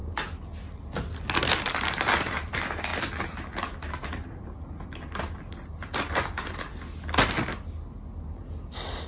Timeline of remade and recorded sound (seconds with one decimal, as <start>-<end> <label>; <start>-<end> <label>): 0.0-9.1 recorded